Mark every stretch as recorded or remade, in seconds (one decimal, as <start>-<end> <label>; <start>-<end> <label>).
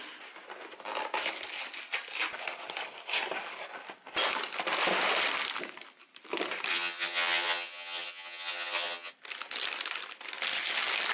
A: 0.0-6.7 recorded; 6.7-9.1 remade; 9.1-11.1 recorded